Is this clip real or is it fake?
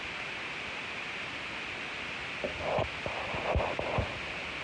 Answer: fake